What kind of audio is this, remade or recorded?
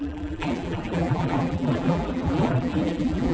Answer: remade